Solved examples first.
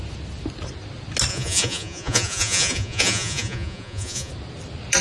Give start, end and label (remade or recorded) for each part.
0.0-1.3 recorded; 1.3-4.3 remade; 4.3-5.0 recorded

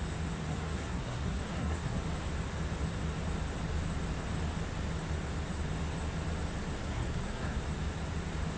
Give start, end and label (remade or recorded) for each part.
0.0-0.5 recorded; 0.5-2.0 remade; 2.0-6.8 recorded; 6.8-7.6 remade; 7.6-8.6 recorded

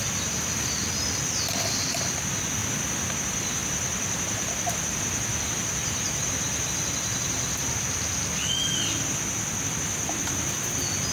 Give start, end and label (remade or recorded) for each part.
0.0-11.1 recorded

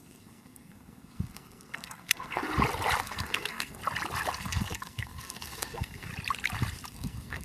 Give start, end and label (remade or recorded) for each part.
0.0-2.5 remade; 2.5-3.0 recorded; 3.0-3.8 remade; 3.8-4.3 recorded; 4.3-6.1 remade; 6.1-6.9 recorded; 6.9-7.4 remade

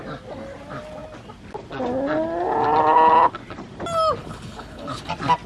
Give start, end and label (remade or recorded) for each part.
0.0-4.2 recorded; 4.2-5.0 remade; 5.0-5.5 recorded

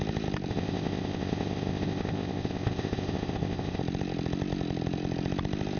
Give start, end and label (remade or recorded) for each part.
0.0-0.5 recorded; 0.5-3.8 remade; 3.8-5.8 recorded

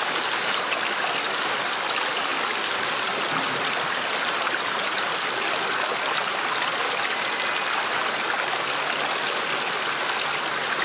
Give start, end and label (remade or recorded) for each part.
0.0-2.3 recorded; 2.3-3.0 remade; 3.0-10.8 recorded